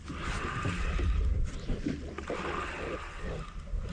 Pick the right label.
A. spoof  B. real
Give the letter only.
B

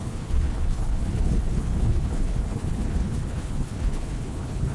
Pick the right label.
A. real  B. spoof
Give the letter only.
B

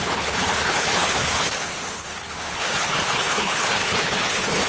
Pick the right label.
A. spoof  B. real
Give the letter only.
A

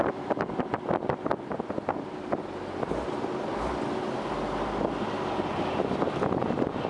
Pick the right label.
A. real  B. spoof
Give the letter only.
A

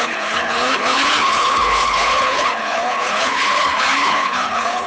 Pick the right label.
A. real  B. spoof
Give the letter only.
B